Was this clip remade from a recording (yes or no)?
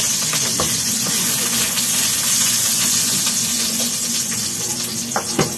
yes